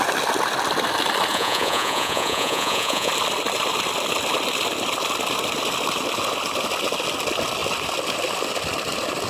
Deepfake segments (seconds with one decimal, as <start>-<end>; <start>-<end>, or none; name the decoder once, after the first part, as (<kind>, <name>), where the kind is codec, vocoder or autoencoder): 1.3-3.1 (vocoder, Vocos)